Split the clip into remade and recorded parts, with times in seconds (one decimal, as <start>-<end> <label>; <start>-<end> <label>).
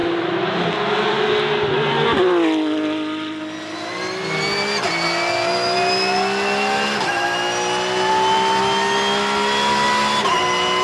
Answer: 0.0-0.7 remade; 0.7-10.8 recorded